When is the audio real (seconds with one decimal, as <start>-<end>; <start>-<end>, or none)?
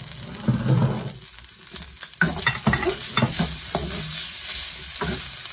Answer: 0.0-5.5